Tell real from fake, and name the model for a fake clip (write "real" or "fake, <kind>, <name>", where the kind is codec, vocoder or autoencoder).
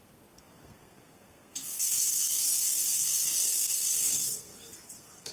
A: fake, codec, SNAC